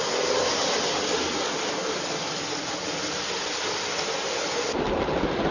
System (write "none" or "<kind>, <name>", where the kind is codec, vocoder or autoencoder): none